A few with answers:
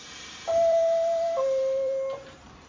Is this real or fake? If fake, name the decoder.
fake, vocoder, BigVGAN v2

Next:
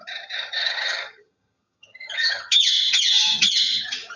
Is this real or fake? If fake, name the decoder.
fake, vocoder, HiFi-GAN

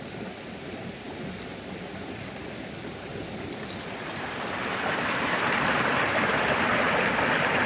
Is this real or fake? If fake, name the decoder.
real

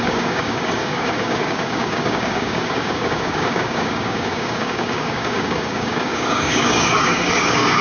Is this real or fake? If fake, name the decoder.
fake, codec, DAC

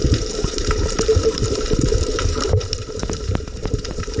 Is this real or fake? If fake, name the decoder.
fake, vocoder, BigVGAN v2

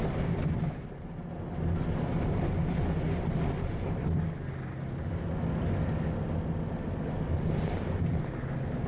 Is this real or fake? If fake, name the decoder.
real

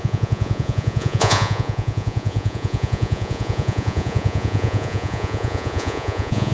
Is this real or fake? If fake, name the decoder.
fake, vocoder, Vocos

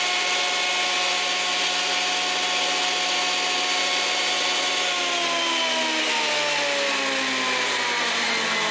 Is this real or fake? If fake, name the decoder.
real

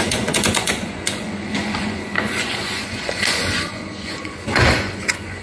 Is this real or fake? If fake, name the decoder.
fake, vocoder, Vocos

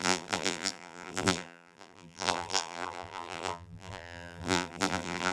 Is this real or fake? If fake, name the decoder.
fake, vocoder, BigVGAN v2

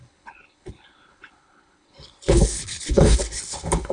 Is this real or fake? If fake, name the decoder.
fake, codec, HILCodec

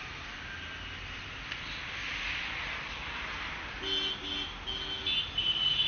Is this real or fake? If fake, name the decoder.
real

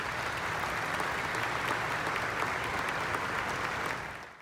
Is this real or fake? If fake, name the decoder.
real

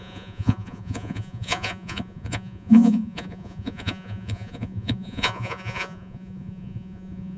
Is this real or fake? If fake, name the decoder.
fake, vocoder, Vocos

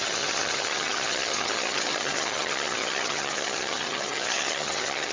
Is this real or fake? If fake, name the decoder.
fake, vocoder, HiFi-GAN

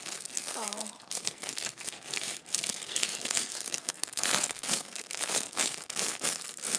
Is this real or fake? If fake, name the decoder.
fake, codec, SNAC